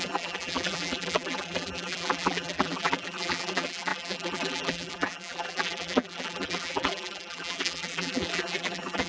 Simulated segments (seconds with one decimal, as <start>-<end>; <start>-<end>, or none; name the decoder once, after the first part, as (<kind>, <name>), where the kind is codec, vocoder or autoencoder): 0.0-9.1 (vocoder, BigVGAN v2)